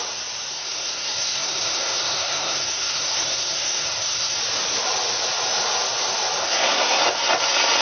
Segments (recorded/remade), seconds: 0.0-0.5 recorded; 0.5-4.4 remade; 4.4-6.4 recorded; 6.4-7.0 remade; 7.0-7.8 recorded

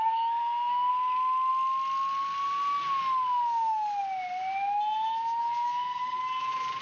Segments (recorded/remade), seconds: 0.0-0.4 recorded; 0.4-0.9 remade; 0.9-5.4 recorded; 5.4-6.2 remade; 6.2-6.8 recorded

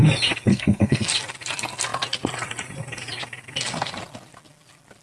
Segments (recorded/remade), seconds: 0.0-0.5 recorded; 0.5-1.1 remade; 1.1-5.0 recorded

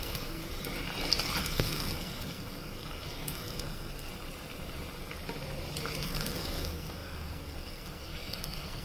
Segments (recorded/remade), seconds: 0.0-0.4 remade; 0.4-1.4 recorded; 1.4-4.1 remade; 4.1-6.0 recorded; 6.0-8.8 remade

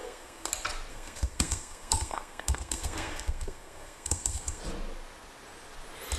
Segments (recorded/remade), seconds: 0.0-0.5 remade; 0.5-0.9 recorded; 0.9-4.6 remade; 4.6-6.2 recorded

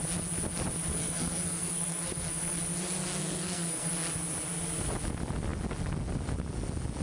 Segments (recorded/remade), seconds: 0.0-0.9 recorded; 0.9-2.6 remade; 2.6-3.2 recorded; 3.2-3.9 remade; 3.9-7.0 recorded

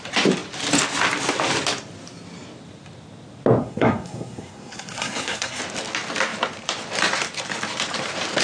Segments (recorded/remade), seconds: 0.0-3.6 recorded; 3.6-5.6 remade; 5.6-8.4 recorded

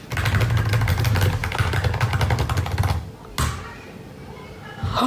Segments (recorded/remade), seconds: 0.0-5.1 recorded